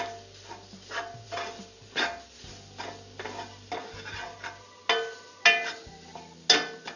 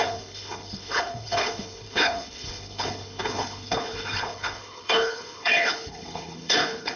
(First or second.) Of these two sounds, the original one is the first